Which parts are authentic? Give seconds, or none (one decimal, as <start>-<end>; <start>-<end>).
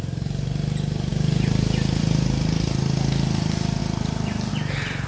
0.0-5.1